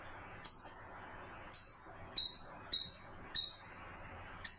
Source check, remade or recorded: recorded